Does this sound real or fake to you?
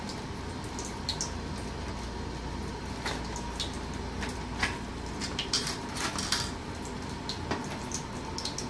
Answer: real